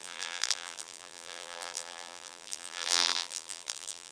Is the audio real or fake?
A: fake